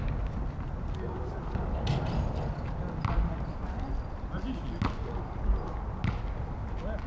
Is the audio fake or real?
real